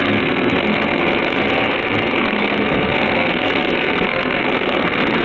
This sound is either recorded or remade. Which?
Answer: remade